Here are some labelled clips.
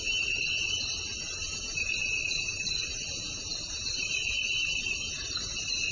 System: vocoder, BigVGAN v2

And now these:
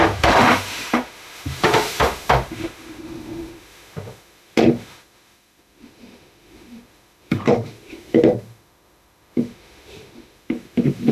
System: autoencoder, DAC-VAE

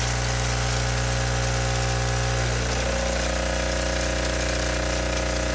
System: none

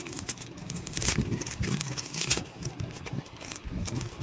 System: codec, SNAC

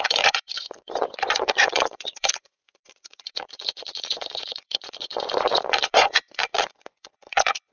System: vocoder, Vocos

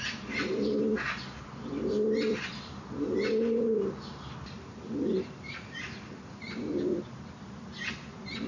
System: vocoder, BigVGAN v2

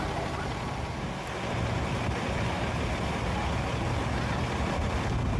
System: none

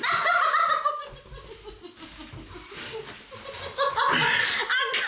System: none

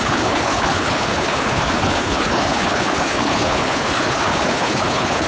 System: codec, HILCodec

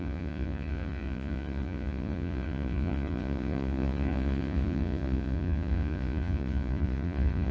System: vocoder, Vocos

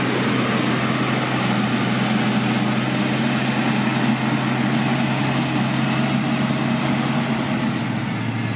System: none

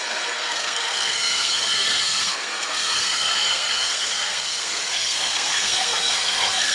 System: codec, SNAC